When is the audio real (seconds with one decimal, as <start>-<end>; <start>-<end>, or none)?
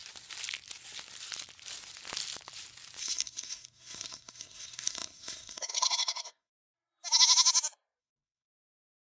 0.0-3.0; 6.6-8.0